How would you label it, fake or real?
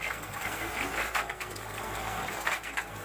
fake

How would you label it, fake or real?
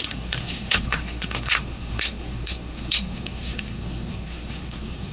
fake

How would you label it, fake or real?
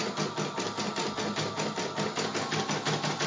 real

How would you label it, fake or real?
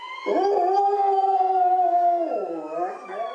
real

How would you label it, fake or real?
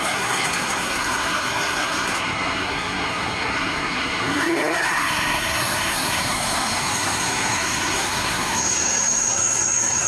fake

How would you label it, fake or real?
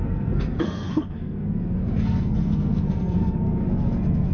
fake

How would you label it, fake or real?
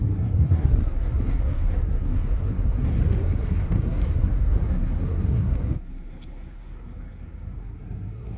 fake